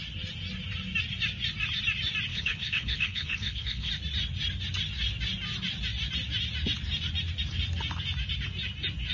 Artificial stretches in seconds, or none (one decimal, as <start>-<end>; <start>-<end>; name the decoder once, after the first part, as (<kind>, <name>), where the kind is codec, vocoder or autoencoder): 2.3-3.9 (codec, HILCodec)